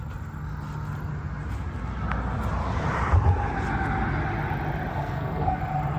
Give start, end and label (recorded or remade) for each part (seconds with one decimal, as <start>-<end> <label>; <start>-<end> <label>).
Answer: 0.0-4.9 recorded; 4.9-5.6 remade; 5.6-6.0 recorded